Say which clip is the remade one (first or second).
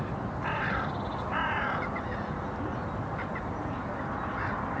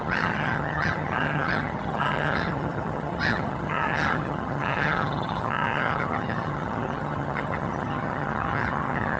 second